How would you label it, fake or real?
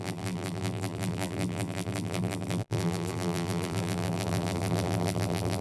fake